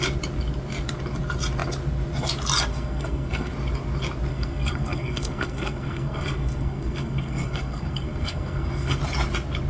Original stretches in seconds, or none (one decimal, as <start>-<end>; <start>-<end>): 0.0-2.7; 3.5-4.3; 9.0-9.7